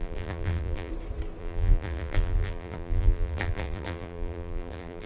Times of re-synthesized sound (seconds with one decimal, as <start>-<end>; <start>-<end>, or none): 0.0-0.9; 1.4-5.1